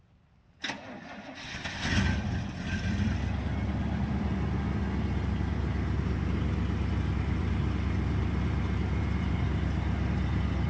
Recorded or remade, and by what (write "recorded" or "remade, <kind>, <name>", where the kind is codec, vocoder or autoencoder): recorded